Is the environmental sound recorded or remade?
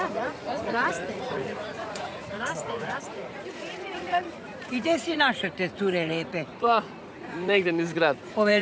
remade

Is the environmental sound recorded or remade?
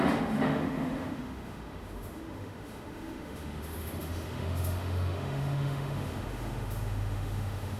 remade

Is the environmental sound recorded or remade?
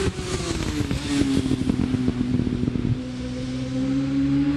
recorded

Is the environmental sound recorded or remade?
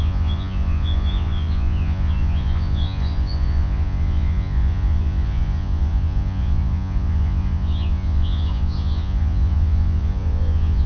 remade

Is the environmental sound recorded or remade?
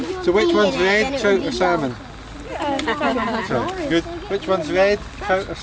recorded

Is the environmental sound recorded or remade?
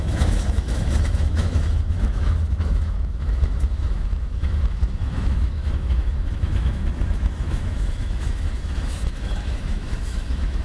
remade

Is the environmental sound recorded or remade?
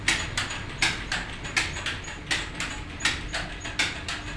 recorded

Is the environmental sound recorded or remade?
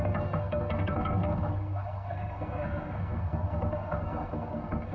remade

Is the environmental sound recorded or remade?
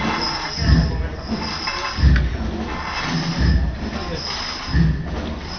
recorded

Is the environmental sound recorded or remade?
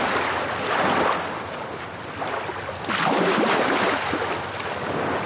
recorded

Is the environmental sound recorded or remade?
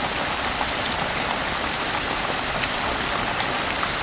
recorded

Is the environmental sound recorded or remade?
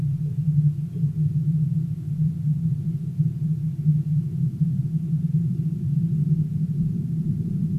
recorded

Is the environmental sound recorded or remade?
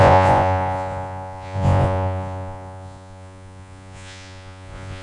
remade